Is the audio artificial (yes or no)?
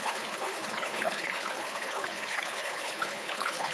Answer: yes